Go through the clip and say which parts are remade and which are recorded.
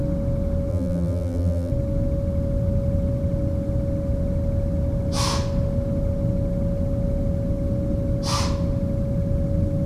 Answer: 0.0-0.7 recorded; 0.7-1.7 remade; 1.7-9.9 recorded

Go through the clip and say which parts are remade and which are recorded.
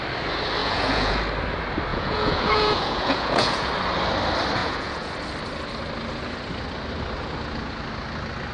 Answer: 0.0-0.6 recorded; 0.6-1.2 remade; 1.2-1.9 recorded; 1.9-3.7 remade; 3.7-4.6 recorded; 4.6-5.1 remade; 5.1-8.5 recorded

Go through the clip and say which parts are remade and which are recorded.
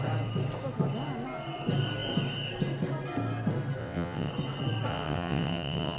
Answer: 0.0-3.8 recorded; 3.8-4.3 remade; 4.3-4.9 recorded; 4.9-6.0 remade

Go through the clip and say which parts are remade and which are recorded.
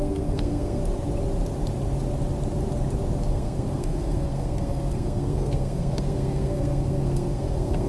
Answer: 0.0-0.8 remade; 0.8-3.3 recorded; 3.3-7.9 remade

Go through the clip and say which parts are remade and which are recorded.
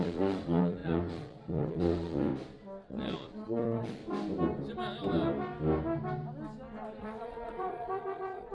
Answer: 0.0-2.3 remade; 2.3-2.9 recorded; 2.9-4.0 remade; 4.0-7.0 recorded; 7.0-8.5 remade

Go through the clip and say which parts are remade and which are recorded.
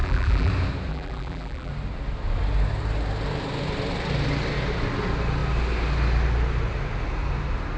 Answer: 0.0-0.5 remade; 0.5-0.9 recorded; 0.9-1.7 remade; 1.7-7.8 recorded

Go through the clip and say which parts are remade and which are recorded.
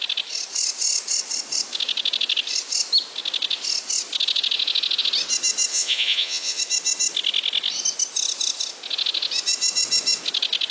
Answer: 0.0-5.7 recorded; 5.7-6.6 remade; 6.6-10.7 recorded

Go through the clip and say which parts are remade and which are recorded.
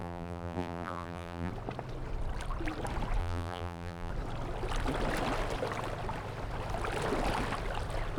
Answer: 0.0-1.5 remade; 1.5-3.2 recorded; 3.2-4.1 remade; 4.1-8.2 recorded